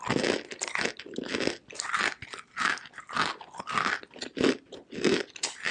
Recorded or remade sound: recorded